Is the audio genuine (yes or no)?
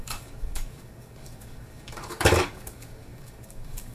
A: no